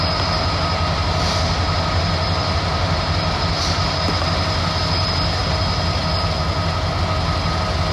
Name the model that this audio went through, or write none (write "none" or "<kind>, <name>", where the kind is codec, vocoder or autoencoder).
none